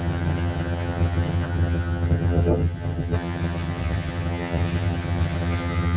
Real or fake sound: fake